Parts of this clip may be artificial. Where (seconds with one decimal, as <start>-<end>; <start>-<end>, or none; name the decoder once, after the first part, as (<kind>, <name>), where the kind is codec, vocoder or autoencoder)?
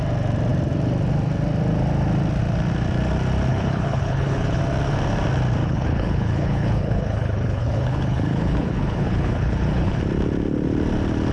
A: 3.5-4.6 (codec, HILCodec); 5.6-10.0